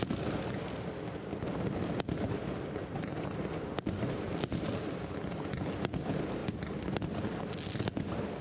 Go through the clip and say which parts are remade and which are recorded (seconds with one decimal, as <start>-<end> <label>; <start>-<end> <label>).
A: 0.0-8.4 recorded